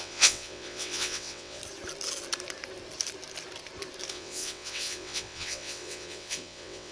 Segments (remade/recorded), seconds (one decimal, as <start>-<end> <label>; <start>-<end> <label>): 0.0-1.6 remade; 1.6-4.1 recorded; 4.1-6.9 remade

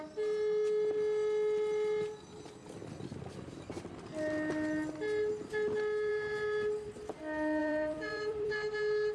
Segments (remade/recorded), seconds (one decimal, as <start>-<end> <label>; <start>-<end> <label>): 0.0-7.6 recorded; 7.6-8.5 remade; 8.5-9.1 recorded

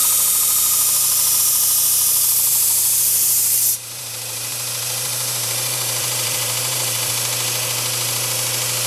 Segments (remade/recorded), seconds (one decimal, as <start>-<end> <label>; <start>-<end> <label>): 0.0-1.4 remade; 1.4-2.5 recorded; 2.5-7.1 remade; 7.1-8.9 recorded

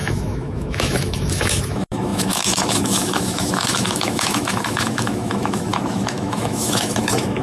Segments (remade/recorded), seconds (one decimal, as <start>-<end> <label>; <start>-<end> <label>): 0.0-7.4 remade

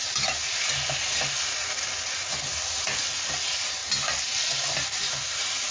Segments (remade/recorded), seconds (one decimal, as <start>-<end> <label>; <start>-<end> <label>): 0.0-5.7 recorded

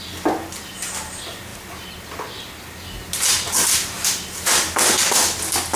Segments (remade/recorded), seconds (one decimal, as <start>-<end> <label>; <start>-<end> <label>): 0.0-5.8 recorded

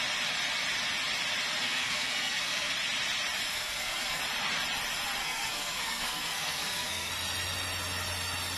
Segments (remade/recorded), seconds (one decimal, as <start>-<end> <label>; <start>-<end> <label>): 0.0-1.6 recorded; 1.6-2.7 remade; 2.7-3.5 recorded; 3.5-4.2 remade; 4.2-5.2 recorded; 5.2-7.1 remade; 7.1-8.6 recorded